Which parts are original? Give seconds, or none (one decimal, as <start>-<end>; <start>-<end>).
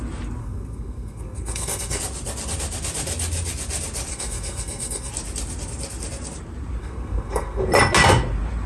0.0-0.4; 2.0-4.1; 5.1-6.8; 7.7-8.7